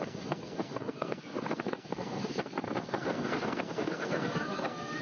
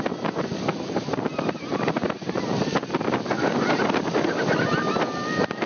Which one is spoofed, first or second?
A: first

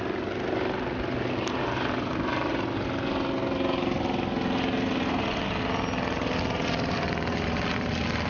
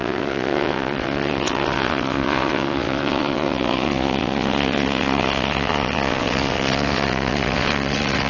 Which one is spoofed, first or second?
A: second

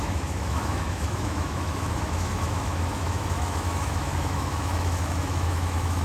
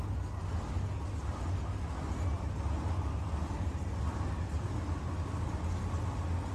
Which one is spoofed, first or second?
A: first